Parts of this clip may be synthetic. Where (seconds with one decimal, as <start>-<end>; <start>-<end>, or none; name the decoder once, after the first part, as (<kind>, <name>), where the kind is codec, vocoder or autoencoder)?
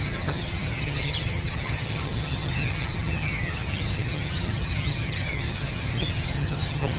0.0-7.0 (vocoder, HiFi-GAN)